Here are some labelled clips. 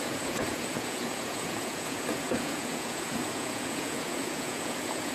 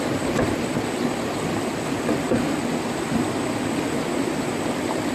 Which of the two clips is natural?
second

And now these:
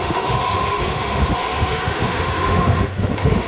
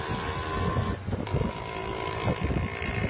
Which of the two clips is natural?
second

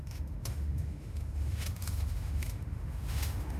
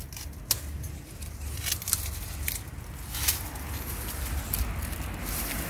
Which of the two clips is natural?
second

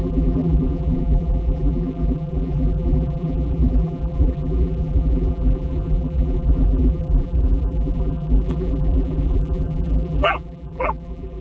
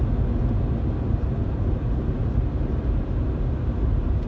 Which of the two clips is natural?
second